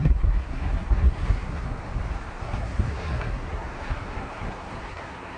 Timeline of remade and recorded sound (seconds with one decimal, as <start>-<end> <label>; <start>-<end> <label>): 0.0-1.8 remade; 1.8-2.4 recorded; 2.4-5.4 remade